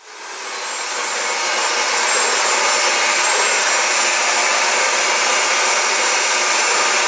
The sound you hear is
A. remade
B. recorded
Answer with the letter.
B